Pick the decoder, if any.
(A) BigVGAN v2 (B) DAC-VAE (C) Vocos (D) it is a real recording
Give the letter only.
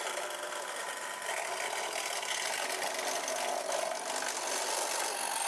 D